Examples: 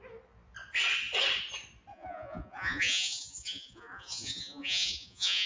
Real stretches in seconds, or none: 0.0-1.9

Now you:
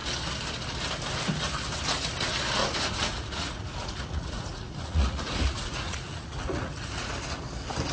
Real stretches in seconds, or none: 0.0-2.6; 7.1-7.9

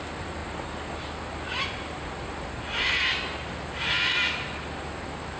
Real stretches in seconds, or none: 0.0-5.4